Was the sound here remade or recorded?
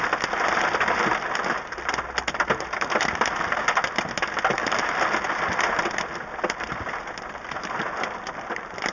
recorded